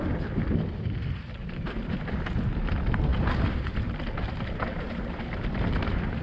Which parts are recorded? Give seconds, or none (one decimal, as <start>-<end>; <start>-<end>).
0.0-1.4; 2.0-3.1